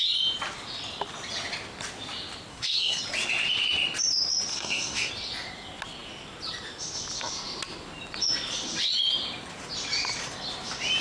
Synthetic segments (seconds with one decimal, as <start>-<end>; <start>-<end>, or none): 2.5-3.0; 4.5-5.1